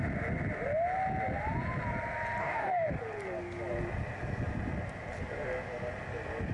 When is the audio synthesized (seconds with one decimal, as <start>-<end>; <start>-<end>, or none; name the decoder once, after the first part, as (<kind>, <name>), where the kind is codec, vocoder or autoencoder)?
2.4-2.9 (codec, DAC)

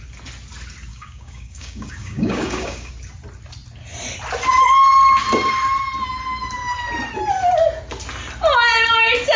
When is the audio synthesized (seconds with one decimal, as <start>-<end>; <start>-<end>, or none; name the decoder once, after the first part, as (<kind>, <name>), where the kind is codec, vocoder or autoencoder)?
0.9-2.9 (codec, DAC)

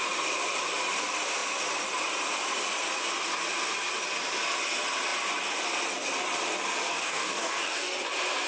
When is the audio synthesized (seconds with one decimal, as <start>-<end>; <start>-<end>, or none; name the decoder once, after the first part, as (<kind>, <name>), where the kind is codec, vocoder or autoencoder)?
6.9-7.9 (codec, DAC)

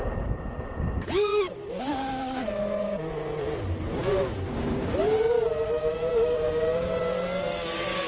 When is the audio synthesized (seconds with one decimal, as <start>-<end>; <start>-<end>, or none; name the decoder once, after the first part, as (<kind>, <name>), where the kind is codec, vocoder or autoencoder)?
1.3-3.1 (codec, DAC); 4.0-4.9; 6.1-7.0

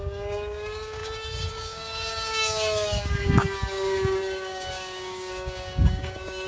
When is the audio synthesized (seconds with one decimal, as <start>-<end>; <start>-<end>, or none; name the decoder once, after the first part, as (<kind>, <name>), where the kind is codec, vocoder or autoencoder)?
0.0-6.5 (codec, DAC)